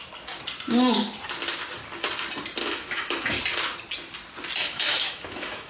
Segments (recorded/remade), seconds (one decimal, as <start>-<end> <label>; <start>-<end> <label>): 0.0-2.6 recorded; 2.6-3.4 remade; 3.4-4.6 recorded; 4.6-5.7 remade